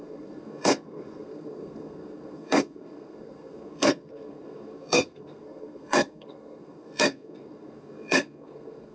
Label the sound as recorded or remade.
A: remade